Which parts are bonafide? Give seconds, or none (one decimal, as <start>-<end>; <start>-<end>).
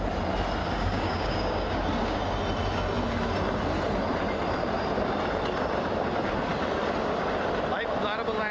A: 0.0-0.6; 2.2-8.5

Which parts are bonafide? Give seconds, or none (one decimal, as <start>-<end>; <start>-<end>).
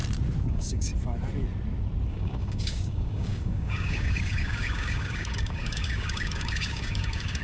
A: 0.0-0.5; 0.9-2.1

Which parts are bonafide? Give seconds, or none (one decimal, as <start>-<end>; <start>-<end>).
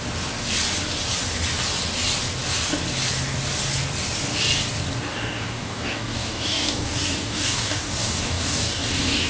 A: 0.0-5.1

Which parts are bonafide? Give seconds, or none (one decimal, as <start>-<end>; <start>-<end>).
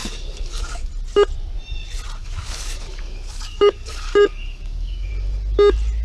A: 0.9-2.2; 5.1-6.0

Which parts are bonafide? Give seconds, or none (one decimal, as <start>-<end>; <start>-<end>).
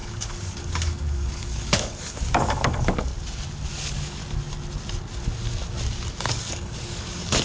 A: 3.1-3.7; 4.2-6.2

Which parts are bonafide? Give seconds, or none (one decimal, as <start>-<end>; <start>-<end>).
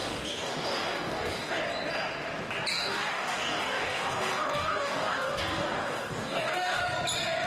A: 1.6-2.7; 6.8-7.5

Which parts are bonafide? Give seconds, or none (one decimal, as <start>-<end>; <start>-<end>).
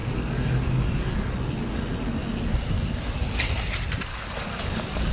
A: 1.3-4.1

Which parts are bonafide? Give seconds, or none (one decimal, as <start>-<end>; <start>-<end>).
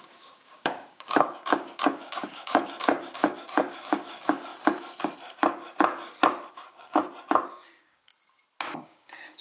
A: 4.5-6.5; 7.0-7.5; 8.1-8.8